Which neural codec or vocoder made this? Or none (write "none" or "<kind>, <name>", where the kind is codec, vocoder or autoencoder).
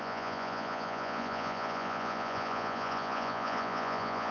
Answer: vocoder, Vocos